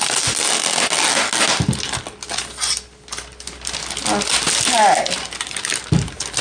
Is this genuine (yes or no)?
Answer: yes